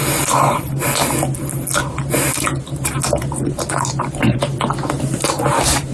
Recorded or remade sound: recorded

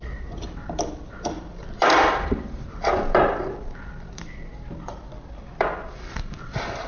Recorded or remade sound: remade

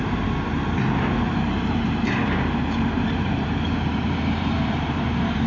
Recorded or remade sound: remade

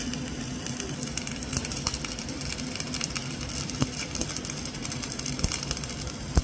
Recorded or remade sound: remade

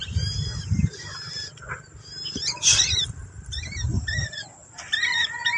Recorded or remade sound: recorded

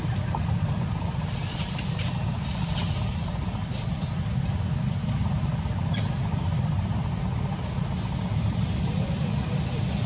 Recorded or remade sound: remade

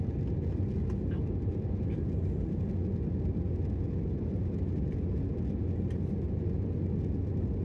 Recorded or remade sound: recorded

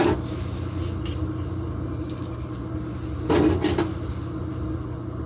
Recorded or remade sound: recorded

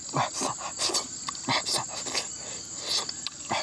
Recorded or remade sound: recorded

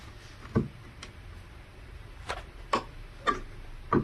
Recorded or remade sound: recorded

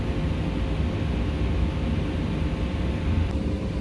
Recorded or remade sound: recorded